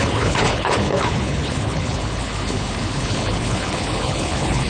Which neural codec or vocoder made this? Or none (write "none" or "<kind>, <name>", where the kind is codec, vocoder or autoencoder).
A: codec, HILCodec